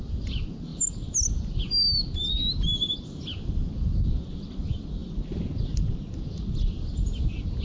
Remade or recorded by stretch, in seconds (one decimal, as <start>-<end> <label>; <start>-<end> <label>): 0.0-7.6 recorded